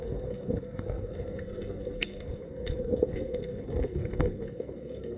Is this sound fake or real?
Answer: fake